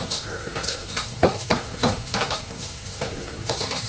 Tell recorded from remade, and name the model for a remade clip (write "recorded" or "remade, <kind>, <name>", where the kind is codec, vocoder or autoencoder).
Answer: remade, codec, SNAC